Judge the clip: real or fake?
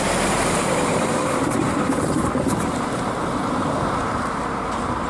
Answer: fake